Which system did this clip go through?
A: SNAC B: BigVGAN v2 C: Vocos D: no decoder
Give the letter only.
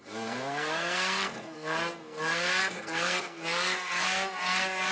A